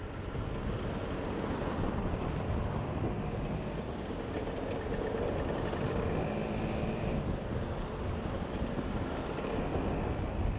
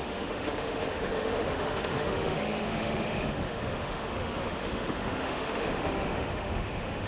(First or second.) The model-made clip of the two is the second